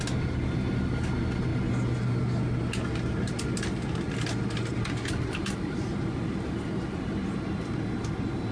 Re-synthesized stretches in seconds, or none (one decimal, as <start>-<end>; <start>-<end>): none